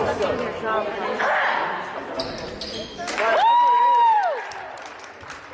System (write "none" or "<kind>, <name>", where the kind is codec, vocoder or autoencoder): vocoder, BigVGAN v2